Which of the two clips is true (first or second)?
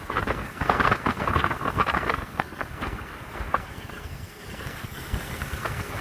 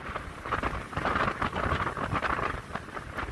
second